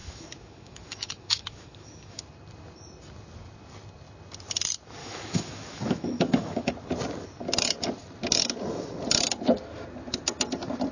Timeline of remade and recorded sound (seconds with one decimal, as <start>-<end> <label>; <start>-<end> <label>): 0.0-2.2 remade; 2.2-5.0 recorded; 5.0-6.7 remade; 6.7-10.9 recorded